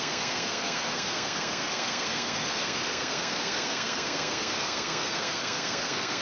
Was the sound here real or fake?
fake